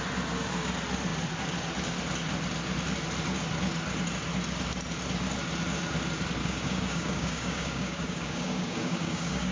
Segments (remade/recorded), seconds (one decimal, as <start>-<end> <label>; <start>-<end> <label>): 0.0-6.4 recorded; 6.4-9.5 remade

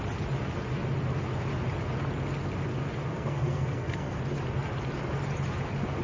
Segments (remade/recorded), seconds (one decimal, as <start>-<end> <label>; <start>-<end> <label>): 0.0-3.1 recorded; 3.1-4.2 remade; 4.2-6.0 recorded

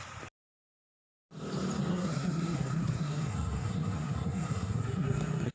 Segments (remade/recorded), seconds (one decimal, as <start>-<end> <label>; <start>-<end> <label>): 0.0-1.9 recorded; 1.9-5.5 remade

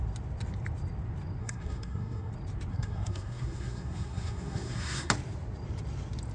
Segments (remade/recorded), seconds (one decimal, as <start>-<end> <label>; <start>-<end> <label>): 0.0-1.4 recorded; 1.4-2.3 remade; 2.3-2.7 recorded; 2.7-5.1 remade; 5.1-6.3 recorded

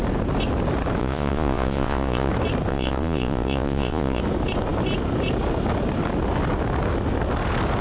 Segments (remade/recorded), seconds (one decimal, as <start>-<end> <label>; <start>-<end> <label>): 0.0-1.0 recorded; 1.0-2.3 remade; 2.3-2.7 recorded; 2.7-4.2 remade; 4.2-7.8 recorded

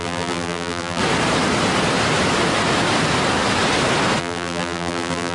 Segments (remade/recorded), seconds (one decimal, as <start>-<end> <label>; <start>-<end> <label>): 0.0-1.0 remade; 1.0-4.2 recorded; 4.2-5.3 remade